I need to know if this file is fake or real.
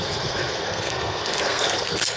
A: fake